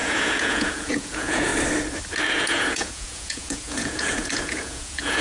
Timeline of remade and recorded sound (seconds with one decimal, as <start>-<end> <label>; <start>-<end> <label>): 0.0-1.5 remade; 1.5-2.3 recorded; 2.3-5.2 remade